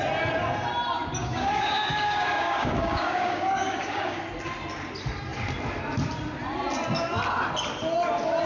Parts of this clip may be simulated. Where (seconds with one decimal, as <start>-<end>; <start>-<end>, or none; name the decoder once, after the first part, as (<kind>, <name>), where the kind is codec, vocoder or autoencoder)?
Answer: 1.2-4.2 (codec, DAC)